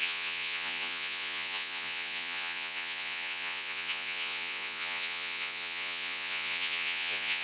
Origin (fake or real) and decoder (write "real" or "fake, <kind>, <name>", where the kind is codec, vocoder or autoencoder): fake, vocoder, Vocos